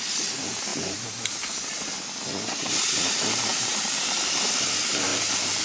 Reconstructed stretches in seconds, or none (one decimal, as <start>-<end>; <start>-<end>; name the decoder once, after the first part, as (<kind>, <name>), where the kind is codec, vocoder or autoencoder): 0.7-1.5 (vocoder, BigVGAN v2); 3.5-4.2; 5.1-5.6